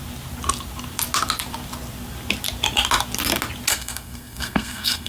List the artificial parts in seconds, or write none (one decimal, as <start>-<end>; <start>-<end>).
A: 3.7-5.1

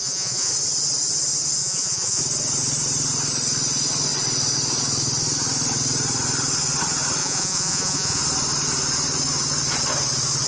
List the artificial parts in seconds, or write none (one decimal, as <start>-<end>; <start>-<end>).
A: 0.0-0.5; 1.6-2.2; 7.2-8.2

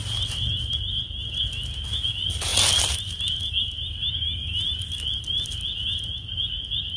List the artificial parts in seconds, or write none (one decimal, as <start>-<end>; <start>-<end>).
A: none

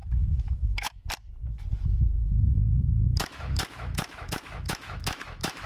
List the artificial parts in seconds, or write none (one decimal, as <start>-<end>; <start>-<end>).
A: 0.0-1.1; 2.2-5.7

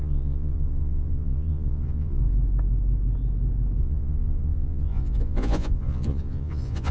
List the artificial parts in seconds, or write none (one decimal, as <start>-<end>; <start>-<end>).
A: 0.0-2.2; 3.8-6.9

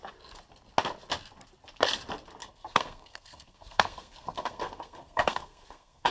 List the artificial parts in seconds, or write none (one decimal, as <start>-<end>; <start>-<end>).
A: 2.4-6.1